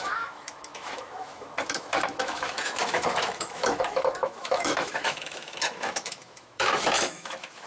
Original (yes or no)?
no